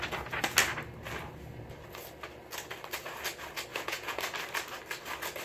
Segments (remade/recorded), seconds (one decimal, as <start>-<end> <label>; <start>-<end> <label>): 0.0-3.7 recorded; 3.7-4.2 remade; 4.2-5.4 recorded